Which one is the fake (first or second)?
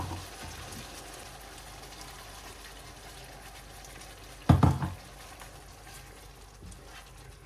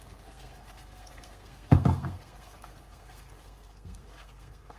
second